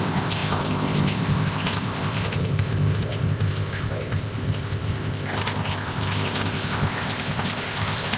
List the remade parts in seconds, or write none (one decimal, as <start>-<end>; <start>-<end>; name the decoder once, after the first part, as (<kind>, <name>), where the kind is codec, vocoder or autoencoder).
0.0-8.2 (codec, ZipCodec)